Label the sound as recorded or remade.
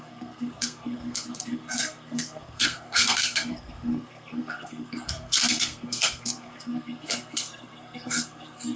remade